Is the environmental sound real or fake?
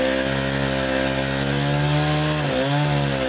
real